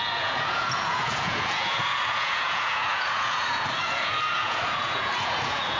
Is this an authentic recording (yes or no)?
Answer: no